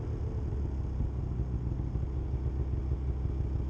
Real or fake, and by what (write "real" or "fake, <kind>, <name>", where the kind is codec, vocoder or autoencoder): real